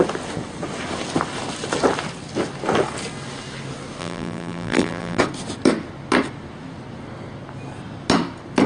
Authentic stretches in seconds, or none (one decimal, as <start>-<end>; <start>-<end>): 0.0-4.0; 5.2-8.7